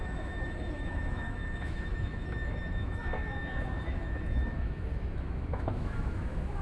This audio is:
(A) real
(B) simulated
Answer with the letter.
B